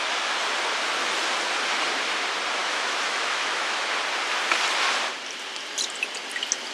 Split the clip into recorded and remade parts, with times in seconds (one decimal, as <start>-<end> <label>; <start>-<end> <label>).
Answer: 0.0-2.6 recorded; 2.6-3.8 remade; 3.8-6.7 recorded